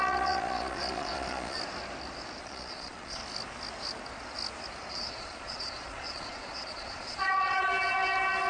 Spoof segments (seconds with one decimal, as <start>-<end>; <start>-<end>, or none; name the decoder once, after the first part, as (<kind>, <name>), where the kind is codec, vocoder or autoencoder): 0.0-1.6 (vocoder, Vocos); 2.4-3.2; 4.9-7.7